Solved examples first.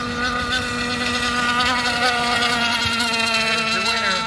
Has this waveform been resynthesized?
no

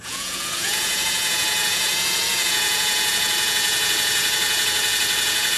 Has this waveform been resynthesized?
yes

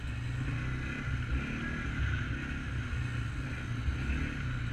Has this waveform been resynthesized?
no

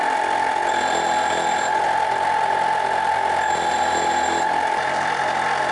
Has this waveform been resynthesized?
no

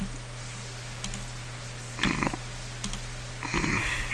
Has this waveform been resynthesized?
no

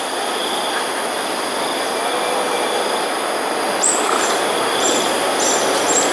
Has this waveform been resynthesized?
yes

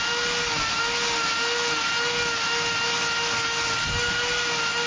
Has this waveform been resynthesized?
no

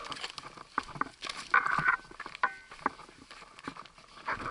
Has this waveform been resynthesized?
no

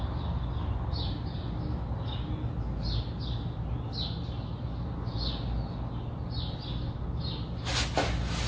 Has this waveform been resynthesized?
no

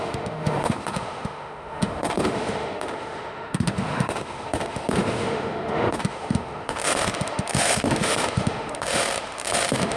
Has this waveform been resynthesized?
yes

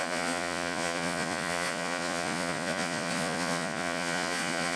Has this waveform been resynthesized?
yes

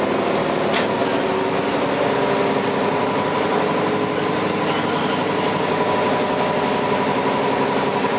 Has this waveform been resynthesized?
no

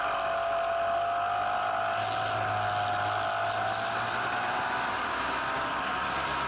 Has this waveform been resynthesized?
no